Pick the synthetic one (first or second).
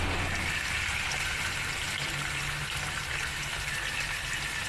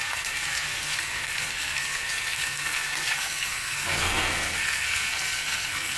second